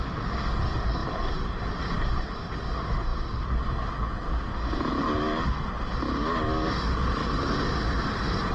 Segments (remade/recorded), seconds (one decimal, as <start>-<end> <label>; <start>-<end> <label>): 0.0-1.0 recorded; 1.0-2.6 remade; 2.6-7.2 recorded; 7.2-8.5 remade